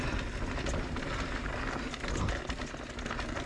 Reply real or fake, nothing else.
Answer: real